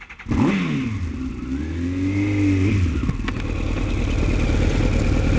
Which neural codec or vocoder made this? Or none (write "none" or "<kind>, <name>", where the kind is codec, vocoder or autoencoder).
none